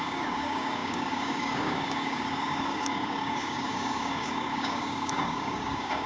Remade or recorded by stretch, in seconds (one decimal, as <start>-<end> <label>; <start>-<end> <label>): 0.0-6.1 remade